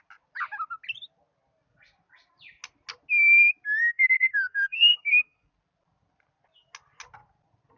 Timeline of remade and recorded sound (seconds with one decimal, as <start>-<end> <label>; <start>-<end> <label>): 0.0-3.8 recorded; 3.8-5.5 remade; 5.5-7.8 recorded